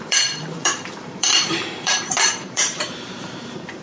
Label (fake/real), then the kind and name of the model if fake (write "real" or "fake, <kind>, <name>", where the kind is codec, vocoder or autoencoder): fake, vocoder, BigVGAN v2